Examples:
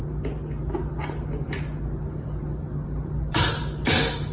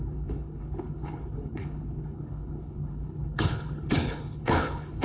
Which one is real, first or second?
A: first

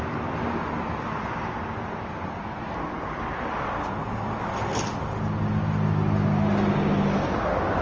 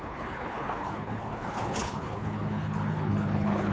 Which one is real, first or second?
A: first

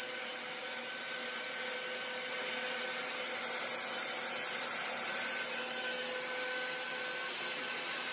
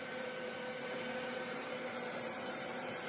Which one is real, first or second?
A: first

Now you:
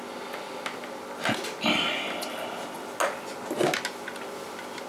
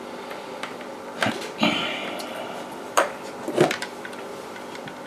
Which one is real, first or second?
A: first